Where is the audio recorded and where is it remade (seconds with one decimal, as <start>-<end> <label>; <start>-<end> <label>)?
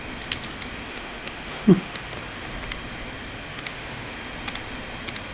0.0-0.9 recorded; 0.9-2.2 remade; 2.2-3.5 recorded; 3.5-4.1 remade; 4.1-5.3 recorded